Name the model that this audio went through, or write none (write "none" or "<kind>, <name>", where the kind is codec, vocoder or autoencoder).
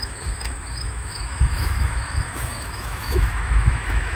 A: autoencoder, DAC-VAE